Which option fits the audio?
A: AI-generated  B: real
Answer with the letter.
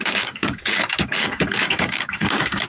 A